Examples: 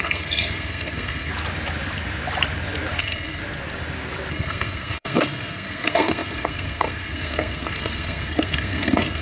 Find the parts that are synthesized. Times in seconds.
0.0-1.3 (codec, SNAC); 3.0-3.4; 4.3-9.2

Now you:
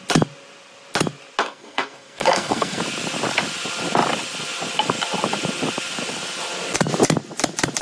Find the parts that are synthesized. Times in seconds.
1.4-2.8 (codec, SNAC)

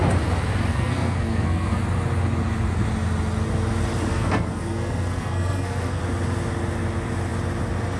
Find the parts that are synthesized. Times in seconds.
0.7-1.8 (codec, SNAC); 4.1-6.0

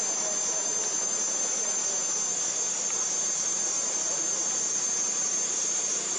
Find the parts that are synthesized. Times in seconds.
none

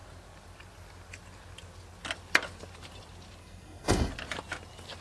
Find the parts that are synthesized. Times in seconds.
3.4-4.1 (codec, SNAC)

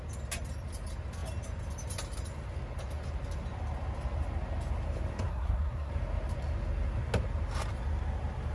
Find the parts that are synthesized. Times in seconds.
5.3-5.9 (codec, SNAC)

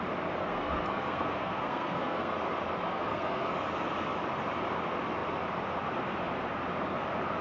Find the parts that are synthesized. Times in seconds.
0.4-2.4 (codec, SNAC); 2.9-3.5

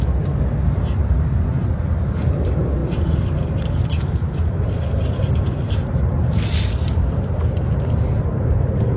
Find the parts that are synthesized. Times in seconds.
none